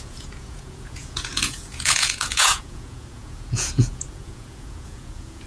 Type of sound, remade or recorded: remade